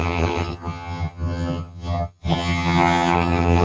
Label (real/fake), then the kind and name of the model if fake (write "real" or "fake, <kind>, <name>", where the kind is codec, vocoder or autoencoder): fake, vocoder, HiFi-GAN